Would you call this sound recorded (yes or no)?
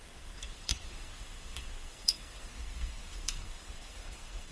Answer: no